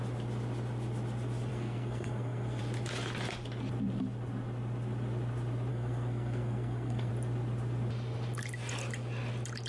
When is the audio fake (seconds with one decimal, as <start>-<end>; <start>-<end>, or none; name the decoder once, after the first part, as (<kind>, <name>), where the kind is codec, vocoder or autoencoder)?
1.5-2.6 (codec, SNAC); 5.7-7.1